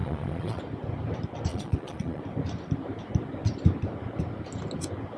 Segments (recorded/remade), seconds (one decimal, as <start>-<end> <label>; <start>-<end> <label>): 0.0-0.6 remade; 0.6-1.5 recorded; 1.5-2.2 remade; 2.2-5.2 recorded